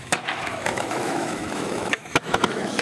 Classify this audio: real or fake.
fake